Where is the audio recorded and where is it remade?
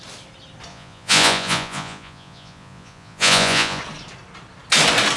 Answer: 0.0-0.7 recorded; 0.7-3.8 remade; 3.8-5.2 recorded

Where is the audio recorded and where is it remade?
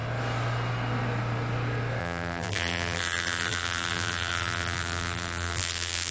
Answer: 0.0-2.0 recorded; 2.0-6.1 remade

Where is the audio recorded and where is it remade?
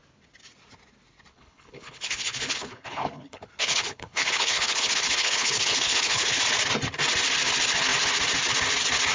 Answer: 0.0-1.3 recorded; 1.3-6.4 remade; 6.4-9.1 recorded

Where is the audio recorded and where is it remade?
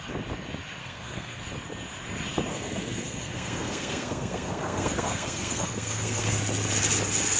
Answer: 0.0-0.8 recorded; 0.8-1.4 remade; 1.4-2.5 recorded; 2.5-6.4 remade; 6.4-7.4 recorded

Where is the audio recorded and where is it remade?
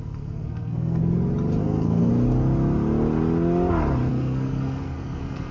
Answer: 0.0-1.0 remade; 1.0-1.6 recorded; 1.6-2.1 remade; 2.1-4.1 recorded; 4.1-5.5 remade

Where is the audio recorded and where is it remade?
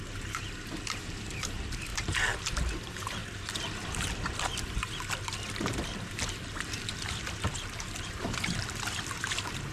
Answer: 0.0-1.9 recorded; 1.9-2.4 remade; 2.4-9.7 recorded